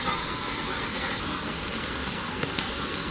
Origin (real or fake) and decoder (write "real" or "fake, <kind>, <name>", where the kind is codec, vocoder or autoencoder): fake, codec, SNAC